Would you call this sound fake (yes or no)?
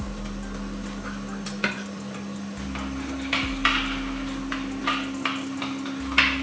no